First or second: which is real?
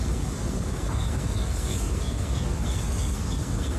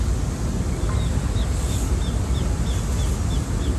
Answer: second